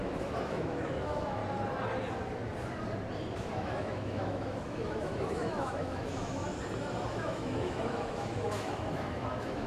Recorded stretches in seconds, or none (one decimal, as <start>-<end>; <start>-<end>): 1.4-3.5; 6.4-7.1